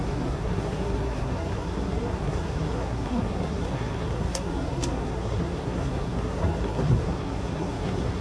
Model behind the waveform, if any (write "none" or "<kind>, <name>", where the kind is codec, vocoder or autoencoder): codec, SNAC